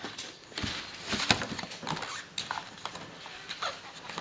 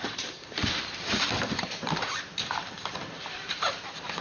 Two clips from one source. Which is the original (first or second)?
first